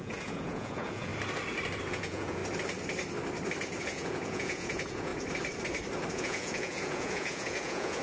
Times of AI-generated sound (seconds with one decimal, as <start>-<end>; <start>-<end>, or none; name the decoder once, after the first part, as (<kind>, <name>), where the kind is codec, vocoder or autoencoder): 0.0-1.1 (vocoder, Vocos); 1.9-2.4; 3.8-5.1; 6.1-8.0